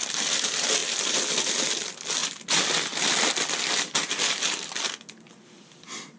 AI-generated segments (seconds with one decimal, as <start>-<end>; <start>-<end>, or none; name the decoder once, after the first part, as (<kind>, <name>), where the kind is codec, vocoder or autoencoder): none